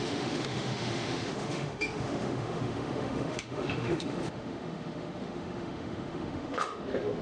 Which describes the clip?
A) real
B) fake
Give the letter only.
B